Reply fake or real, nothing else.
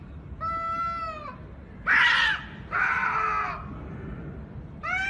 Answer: real